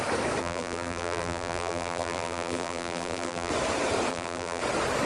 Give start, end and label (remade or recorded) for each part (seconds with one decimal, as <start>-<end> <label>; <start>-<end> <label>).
0.0-0.4 recorded; 0.4-3.5 remade; 3.5-4.1 recorded; 4.1-4.6 remade; 4.6-5.1 recorded